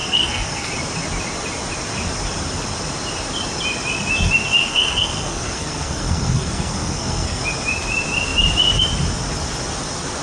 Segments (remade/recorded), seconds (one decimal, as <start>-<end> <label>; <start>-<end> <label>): 0.0-0.7 remade; 0.7-4.6 recorded; 4.6-7.4 remade; 7.4-10.2 recorded